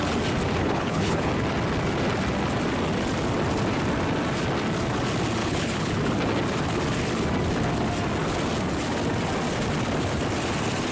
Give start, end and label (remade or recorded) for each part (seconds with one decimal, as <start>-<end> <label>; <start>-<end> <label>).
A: 0.0-0.6 recorded; 0.6-1.3 remade; 1.3-5.4 recorded; 5.4-6.0 remade; 6.0-10.9 recorded